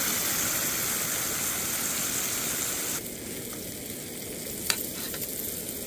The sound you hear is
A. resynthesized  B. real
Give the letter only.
B